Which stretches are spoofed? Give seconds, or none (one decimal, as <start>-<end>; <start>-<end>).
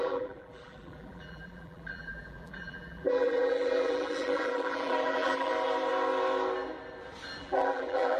0.0-5.5; 7.4-8.2